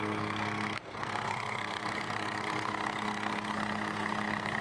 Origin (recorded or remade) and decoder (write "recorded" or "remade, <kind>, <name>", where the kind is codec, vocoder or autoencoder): remade, codec, SNAC